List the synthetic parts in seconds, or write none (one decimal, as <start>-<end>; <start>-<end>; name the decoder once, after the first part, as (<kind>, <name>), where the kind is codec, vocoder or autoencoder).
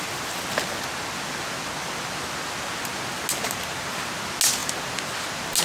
none